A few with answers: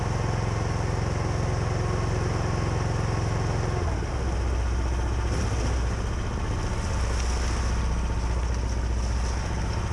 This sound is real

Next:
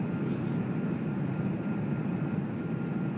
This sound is real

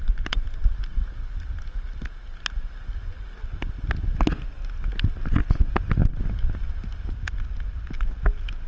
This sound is real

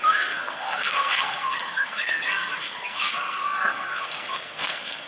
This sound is fake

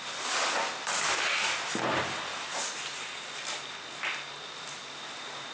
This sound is real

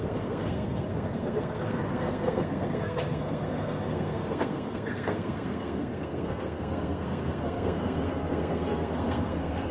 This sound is fake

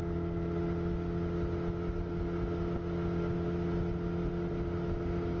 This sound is real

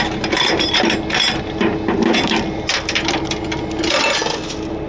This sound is real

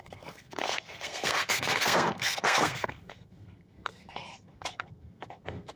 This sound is fake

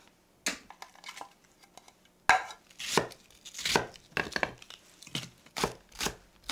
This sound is real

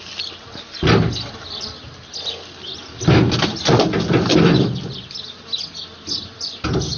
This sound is real